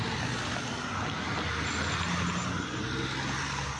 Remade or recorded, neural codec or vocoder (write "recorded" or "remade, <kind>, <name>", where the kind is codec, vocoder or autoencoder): recorded